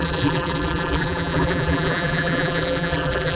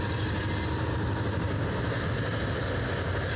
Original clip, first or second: second